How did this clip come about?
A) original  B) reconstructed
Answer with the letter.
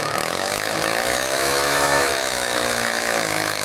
B